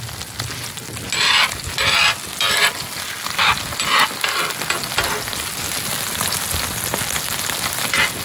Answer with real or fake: real